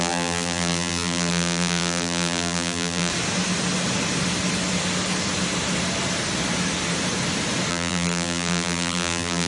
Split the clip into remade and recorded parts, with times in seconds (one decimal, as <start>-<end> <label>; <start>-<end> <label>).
0.0-3.1 remade; 3.1-7.7 recorded; 7.7-9.5 remade